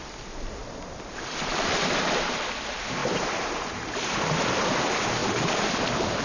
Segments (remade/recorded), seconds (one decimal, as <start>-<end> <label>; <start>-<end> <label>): 0.0-0.6 remade; 0.6-1.1 recorded; 1.1-3.0 remade; 3.0-4.5 recorded; 4.5-6.2 remade